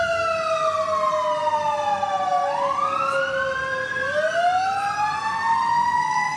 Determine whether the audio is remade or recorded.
recorded